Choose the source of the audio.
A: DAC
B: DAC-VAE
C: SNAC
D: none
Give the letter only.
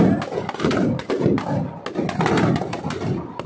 D